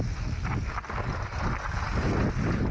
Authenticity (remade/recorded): recorded